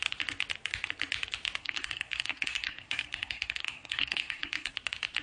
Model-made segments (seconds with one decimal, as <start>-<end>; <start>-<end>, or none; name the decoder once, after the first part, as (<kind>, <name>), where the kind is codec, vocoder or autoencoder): 1.6-4.7 (codec, SNAC)